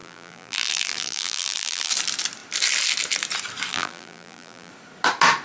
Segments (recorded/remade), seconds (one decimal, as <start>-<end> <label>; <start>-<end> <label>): 0.0-1.9 remade; 1.9-3.7 recorded; 3.7-4.7 remade; 4.7-5.4 recorded